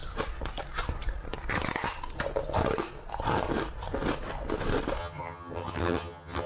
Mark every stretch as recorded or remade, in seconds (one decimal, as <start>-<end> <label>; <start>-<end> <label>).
0.0-5.0 recorded; 5.0-6.5 remade